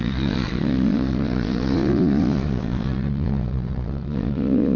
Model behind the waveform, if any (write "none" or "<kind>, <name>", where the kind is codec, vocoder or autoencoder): vocoder, Vocos